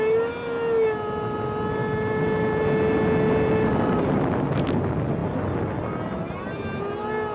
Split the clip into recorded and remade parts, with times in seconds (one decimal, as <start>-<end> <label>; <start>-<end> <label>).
0.0-7.3 recorded